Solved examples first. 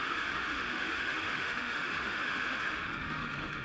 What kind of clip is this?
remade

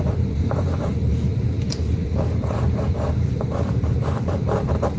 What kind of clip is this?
remade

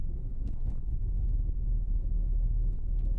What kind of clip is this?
remade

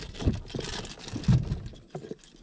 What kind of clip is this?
recorded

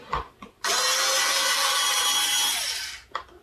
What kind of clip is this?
recorded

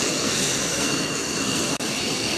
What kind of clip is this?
remade